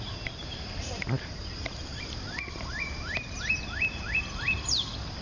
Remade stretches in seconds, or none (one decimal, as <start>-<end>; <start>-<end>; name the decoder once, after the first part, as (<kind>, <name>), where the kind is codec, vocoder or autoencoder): 0.4-3.5 (vocoder, BigVGAN v2)